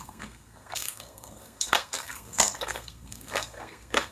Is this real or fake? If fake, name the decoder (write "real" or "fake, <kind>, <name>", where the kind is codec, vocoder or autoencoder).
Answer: fake, codec, SNAC